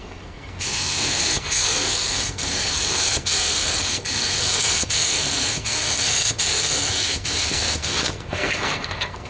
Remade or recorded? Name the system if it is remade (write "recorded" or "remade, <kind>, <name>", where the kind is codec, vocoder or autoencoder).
remade, codec, SNAC